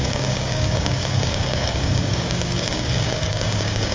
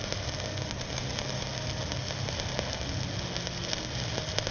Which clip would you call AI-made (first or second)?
first